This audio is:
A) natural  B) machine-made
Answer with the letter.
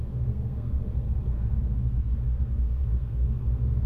B